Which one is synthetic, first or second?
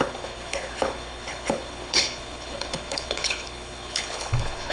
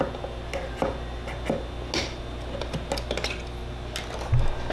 first